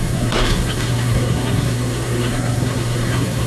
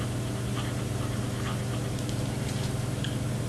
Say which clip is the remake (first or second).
first